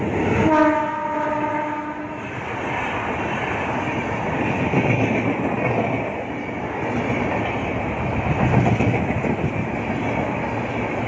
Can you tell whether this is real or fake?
real